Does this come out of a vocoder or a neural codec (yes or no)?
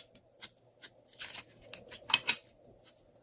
no